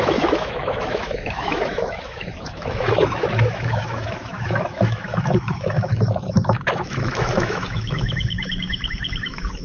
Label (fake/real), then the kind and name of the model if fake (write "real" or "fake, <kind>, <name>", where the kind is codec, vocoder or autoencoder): fake, autoencoder, DAC-VAE